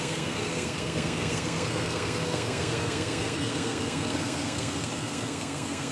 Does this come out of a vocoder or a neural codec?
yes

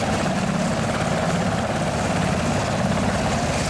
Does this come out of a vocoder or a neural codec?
no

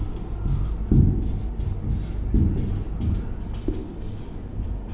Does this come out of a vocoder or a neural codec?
no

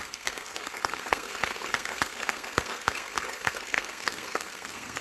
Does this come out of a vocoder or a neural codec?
yes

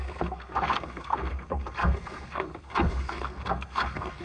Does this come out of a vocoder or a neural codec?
yes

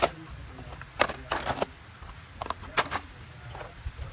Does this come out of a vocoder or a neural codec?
no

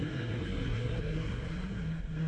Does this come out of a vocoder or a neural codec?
yes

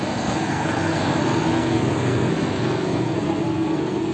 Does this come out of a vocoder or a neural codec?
yes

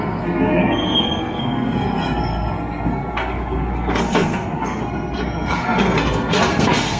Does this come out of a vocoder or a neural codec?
yes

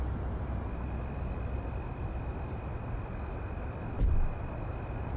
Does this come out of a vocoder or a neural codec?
no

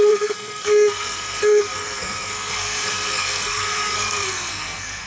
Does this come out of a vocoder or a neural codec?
yes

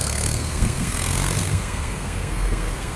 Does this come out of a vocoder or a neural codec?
yes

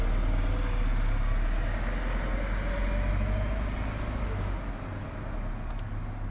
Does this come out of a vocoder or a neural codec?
no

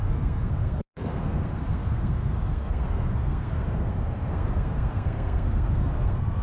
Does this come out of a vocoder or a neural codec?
yes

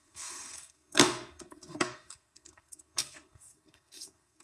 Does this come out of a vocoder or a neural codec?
yes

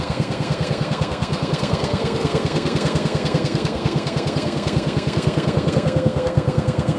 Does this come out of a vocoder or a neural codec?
yes